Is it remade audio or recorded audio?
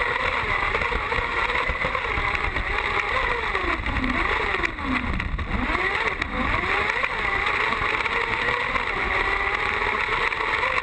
recorded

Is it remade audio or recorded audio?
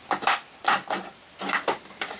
recorded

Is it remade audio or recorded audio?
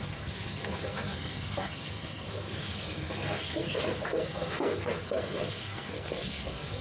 remade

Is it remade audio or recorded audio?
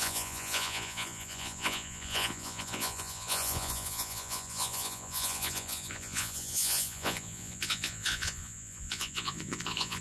remade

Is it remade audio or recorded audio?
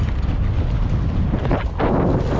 recorded